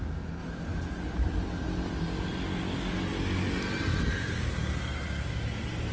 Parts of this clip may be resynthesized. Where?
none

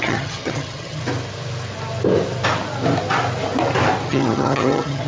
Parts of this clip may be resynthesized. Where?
0.0-1.0; 4.1-5.1

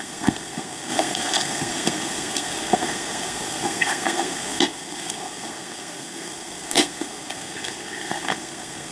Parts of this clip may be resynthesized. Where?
0.0-8.9

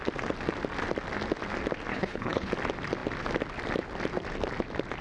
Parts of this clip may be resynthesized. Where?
1.9-2.5

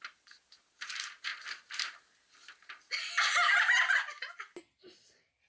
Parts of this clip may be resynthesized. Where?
0.0-1.3; 4.6-5.5